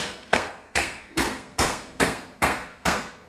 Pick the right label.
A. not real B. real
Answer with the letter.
A